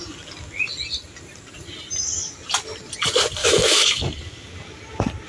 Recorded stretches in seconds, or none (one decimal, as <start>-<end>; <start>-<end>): 0.0-3.4; 4.0-5.3